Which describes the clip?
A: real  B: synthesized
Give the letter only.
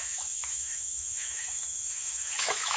B